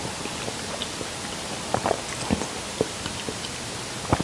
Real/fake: real